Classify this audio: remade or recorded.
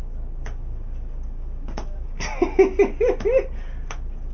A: recorded